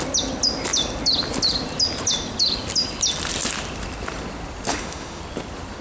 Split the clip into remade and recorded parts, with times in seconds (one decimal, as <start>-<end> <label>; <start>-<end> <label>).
0.0-4.7 recorded; 4.7-5.2 remade; 5.2-5.8 recorded

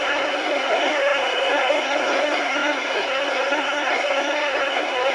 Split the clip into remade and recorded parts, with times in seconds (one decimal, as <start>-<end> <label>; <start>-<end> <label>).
0.0-5.1 remade